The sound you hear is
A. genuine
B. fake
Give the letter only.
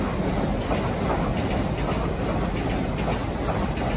A